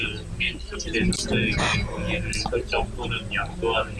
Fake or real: real